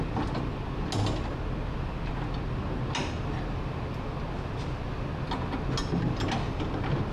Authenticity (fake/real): real